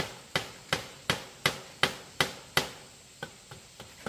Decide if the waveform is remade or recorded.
recorded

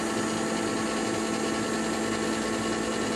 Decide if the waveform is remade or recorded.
recorded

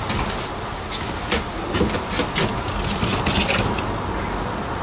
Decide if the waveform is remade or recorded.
recorded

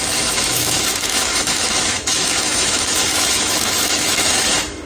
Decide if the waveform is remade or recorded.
remade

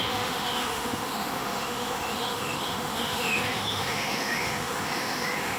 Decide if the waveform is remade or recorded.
remade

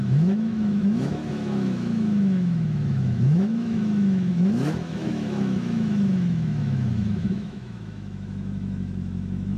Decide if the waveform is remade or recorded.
remade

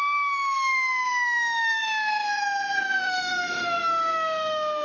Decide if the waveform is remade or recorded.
remade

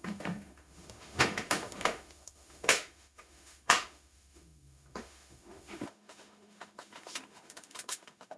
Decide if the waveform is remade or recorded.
remade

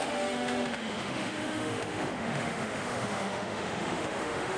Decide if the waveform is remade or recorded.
remade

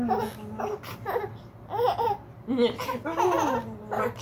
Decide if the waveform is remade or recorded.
recorded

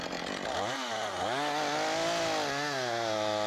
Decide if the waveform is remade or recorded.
recorded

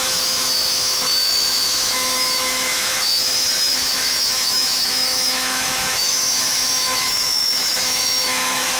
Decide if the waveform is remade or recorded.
remade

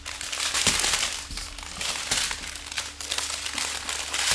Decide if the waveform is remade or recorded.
recorded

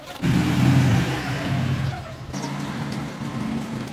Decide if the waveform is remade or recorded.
recorded